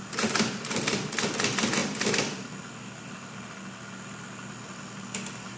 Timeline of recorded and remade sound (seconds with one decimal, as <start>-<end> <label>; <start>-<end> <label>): 0.0-5.6 recorded